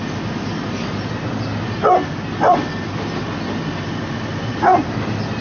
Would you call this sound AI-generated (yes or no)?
no